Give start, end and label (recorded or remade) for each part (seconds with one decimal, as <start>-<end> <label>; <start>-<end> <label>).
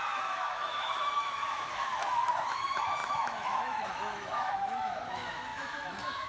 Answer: 0.0-6.3 remade